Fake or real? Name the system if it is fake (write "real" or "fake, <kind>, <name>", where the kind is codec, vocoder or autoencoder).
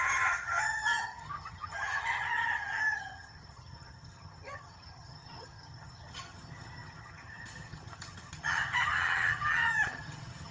fake, vocoder, HiFi-GAN